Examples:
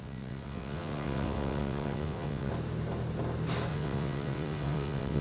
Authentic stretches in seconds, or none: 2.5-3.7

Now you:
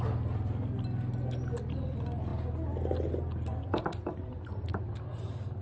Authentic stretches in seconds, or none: 0.0-5.6

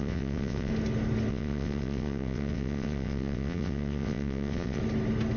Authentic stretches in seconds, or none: 0.7-1.3; 4.8-5.4